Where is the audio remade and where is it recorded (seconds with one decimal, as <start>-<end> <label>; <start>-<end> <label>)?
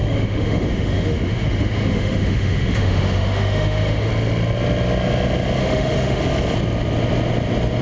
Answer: 0.0-4.1 remade; 4.1-5.6 recorded; 5.6-6.2 remade; 6.2-7.8 recorded